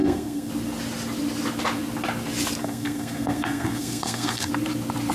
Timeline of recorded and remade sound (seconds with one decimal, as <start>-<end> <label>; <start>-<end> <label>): 0.0-0.5 remade; 0.5-2.6 recorded; 2.6-4.5 remade; 4.5-5.1 recorded